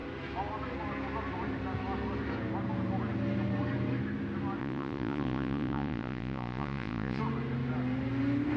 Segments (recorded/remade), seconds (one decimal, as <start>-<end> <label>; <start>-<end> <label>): 0.0-4.6 recorded; 4.6-7.2 remade; 7.2-8.6 recorded